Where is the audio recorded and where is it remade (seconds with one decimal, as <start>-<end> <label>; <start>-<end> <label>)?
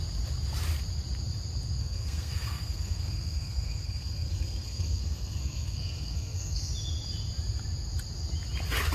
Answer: 0.0-1.8 recorded; 1.8-6.7 remade; 6.7-8.9 recorded